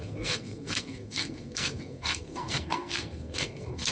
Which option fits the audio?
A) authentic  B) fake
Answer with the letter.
B